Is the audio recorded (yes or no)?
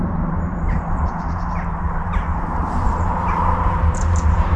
no